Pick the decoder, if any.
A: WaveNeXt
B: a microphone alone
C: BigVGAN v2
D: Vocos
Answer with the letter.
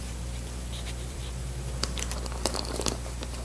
C